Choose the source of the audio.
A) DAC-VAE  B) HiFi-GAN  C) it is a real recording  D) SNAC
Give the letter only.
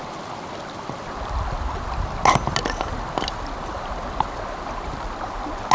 C